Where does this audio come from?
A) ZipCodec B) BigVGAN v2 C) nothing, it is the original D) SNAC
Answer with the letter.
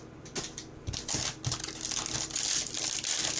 C